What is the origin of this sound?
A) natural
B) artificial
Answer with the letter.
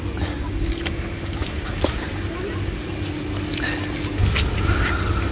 A